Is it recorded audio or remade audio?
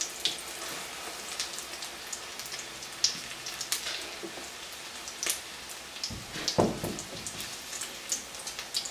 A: recorded